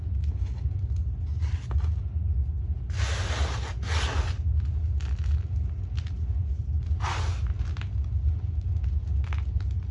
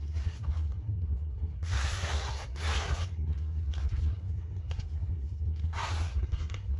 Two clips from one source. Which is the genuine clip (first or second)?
first